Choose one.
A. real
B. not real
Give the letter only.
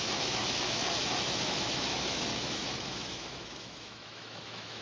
B